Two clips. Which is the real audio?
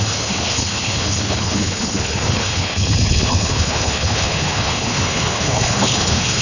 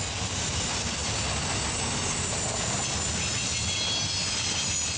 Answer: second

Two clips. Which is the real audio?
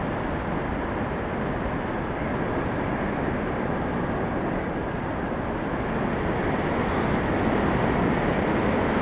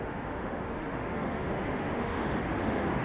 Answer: first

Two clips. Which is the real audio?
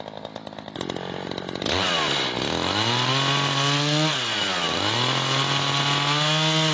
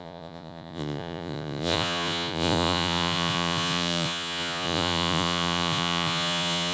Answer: first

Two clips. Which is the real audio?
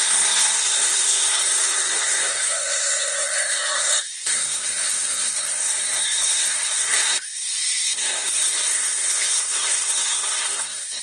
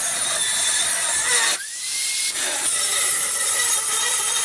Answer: second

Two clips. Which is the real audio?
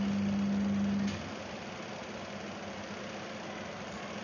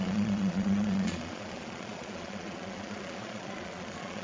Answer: first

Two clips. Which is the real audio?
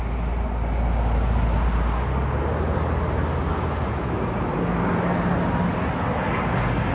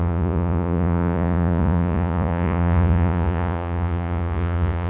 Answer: first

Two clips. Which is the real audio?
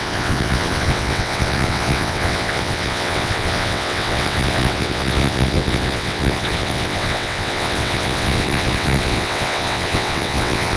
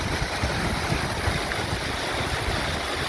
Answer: second